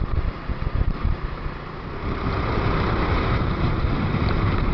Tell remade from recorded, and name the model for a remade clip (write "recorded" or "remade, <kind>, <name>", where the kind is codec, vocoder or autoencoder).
remade, vocoder, BigVGAN v2